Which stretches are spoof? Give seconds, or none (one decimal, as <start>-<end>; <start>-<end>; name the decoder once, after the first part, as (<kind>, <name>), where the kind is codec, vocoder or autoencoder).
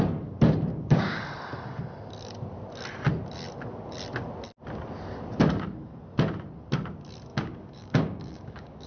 0.7-1.2 (codec, DAC); 7.3-8.9